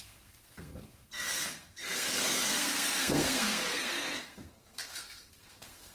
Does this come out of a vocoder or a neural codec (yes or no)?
yes